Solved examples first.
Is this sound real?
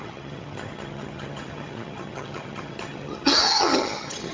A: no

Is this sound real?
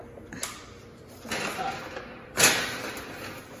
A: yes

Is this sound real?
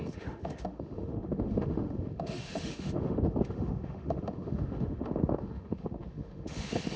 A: no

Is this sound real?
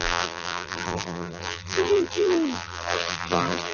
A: no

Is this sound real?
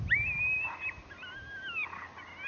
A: yes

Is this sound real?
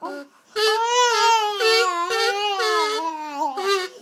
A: yes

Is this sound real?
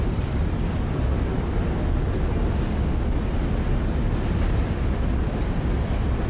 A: yes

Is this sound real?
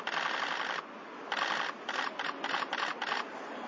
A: yes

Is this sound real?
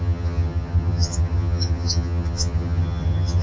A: no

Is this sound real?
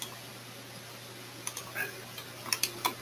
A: yes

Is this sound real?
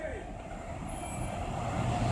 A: yes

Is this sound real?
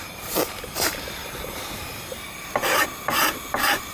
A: yes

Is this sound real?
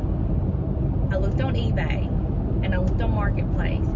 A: yes